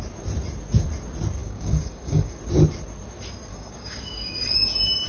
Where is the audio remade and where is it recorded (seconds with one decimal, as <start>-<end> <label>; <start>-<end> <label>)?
0.0-1.4 recorded; 1.4-2.4 remade; 2.4-3.5 recorded; 3.5-4.4 remade; 4.4-5.1 recorded